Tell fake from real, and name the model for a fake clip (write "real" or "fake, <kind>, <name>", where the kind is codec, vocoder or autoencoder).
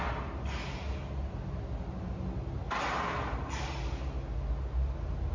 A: real